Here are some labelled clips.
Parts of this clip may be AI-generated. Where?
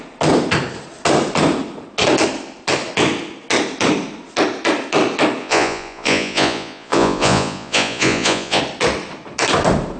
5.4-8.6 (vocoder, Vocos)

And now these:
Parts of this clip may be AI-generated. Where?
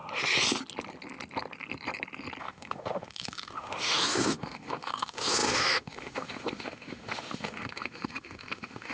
2.4-8.9 (autoencoder, DAC-VAE)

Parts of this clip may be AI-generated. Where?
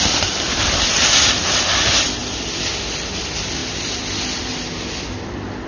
none